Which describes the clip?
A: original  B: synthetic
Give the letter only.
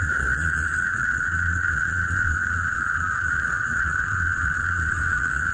B